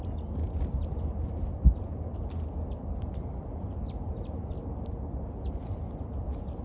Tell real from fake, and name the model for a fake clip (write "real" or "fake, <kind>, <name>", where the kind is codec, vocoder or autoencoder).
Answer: real